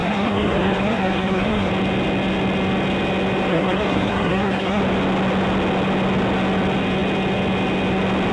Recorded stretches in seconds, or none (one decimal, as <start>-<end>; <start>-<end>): 1.7-3.5; 4.8-8.3